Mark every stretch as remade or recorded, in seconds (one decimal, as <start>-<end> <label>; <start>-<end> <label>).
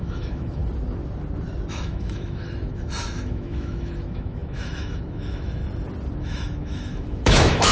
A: 0.0-0.6 remade; 0.6-1.7 recorded; 1.7-5.6 remade; 5.6-6.2 recorded; 6.2-7.7 remade